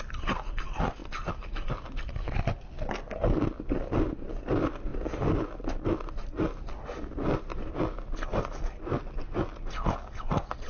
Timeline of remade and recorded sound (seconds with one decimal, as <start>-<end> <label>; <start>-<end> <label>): 0.0-10.7 recorded